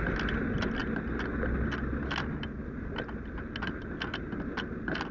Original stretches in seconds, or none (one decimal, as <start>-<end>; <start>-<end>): 0.0-5.1